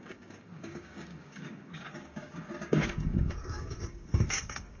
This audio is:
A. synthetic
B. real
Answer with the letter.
A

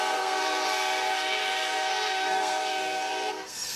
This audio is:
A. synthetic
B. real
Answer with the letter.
A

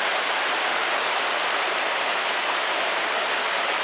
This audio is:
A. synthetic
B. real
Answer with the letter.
B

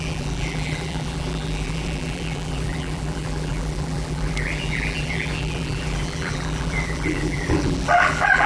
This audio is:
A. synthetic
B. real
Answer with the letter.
A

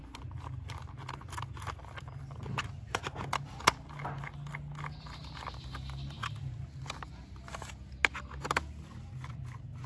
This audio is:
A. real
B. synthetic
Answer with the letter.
A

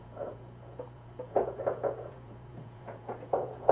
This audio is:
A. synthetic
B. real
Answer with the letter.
A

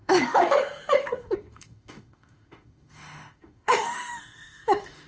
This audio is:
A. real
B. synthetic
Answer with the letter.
B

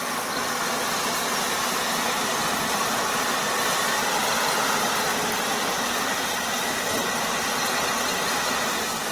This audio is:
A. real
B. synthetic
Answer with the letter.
A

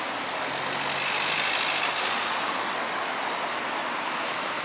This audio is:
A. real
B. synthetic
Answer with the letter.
A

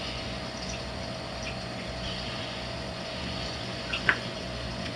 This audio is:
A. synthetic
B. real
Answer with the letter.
A